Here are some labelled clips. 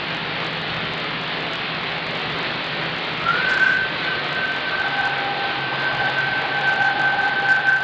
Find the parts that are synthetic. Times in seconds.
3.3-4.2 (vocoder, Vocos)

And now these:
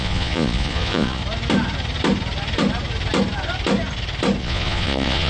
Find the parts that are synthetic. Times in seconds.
0.0-1.2 (vocoder, Vocos); 4.4-5.3

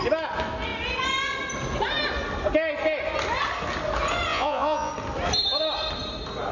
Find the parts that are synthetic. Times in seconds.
4.3-4.9 (vocoder, Vocos)

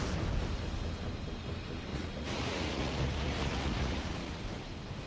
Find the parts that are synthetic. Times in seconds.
1.9-4.4 (vocoder, Vocos)

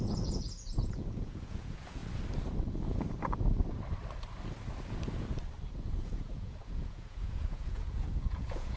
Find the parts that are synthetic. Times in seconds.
0.0-2.0 (vocoder, Vocos); 5.7-8.8

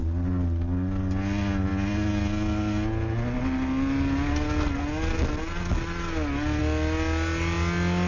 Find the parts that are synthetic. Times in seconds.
none